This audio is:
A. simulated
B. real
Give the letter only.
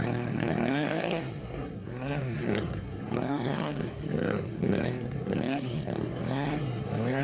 A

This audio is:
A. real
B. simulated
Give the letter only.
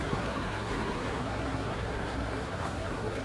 B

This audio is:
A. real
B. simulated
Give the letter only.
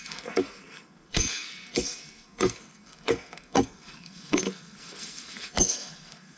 B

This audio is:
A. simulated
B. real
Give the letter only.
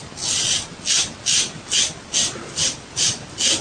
B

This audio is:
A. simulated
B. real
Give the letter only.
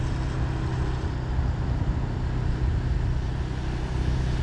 B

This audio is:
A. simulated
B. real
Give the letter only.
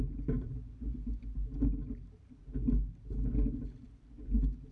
B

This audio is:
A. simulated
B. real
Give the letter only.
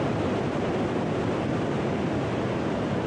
B